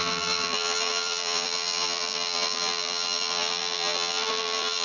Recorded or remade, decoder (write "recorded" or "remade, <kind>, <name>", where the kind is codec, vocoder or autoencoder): remade, vocoder, BigVGAN v2